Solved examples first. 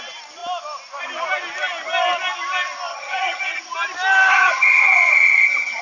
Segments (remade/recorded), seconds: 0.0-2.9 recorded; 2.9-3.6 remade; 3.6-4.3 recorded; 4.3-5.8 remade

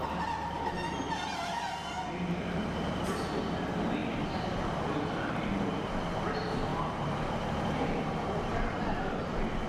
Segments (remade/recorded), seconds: 0.0-4.0 recorded; 4.0-4.6 remade; 4.6-6.7 recorded; 6.7-8.7 remade; 8.7-9.7 recorded